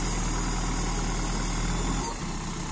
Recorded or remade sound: recorded